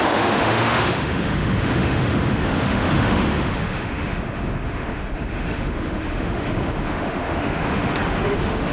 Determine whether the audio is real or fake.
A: fake